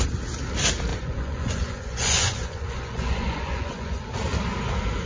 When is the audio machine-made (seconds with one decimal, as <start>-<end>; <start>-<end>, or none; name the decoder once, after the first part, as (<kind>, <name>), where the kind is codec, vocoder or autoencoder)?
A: 0.9-4.0 (vocoder, Vocos)